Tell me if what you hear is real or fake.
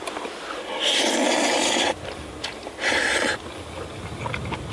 real